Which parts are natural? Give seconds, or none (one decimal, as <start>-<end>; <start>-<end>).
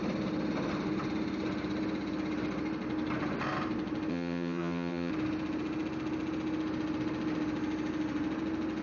0.0-4.1; 5.1-8.8